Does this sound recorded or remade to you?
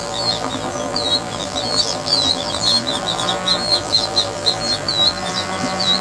remade